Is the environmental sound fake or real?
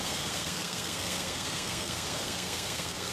fake